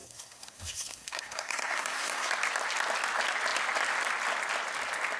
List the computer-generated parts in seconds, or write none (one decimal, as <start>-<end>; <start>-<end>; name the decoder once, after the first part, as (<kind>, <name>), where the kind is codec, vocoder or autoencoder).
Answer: 0.0-2.3 (codec, SNAC)